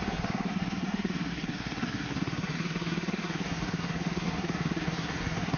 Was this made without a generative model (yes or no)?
no